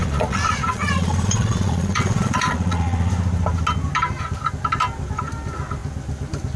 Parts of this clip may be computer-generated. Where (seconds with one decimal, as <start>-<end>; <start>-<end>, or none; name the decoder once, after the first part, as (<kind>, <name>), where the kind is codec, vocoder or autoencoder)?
0.0-3.1 (vocoder, Vocos)